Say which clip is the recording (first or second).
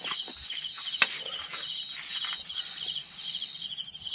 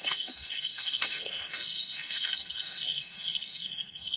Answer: first